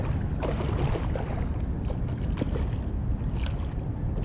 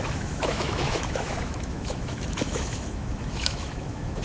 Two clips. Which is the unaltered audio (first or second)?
first